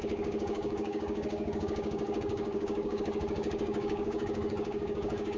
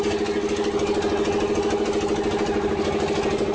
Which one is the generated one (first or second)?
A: first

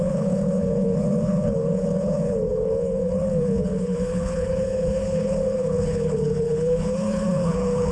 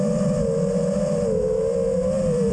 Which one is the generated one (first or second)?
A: first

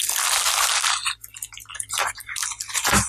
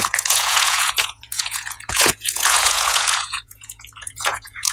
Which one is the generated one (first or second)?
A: second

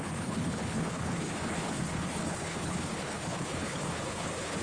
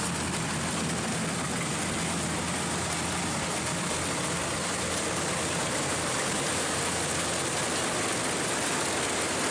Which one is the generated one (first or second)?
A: first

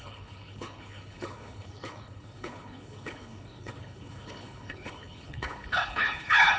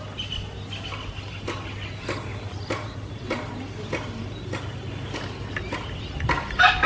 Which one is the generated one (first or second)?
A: first